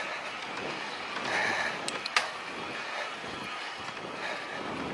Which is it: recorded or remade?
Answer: recorded